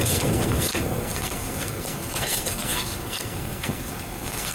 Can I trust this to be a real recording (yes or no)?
no